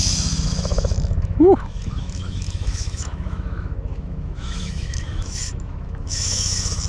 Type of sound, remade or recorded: remade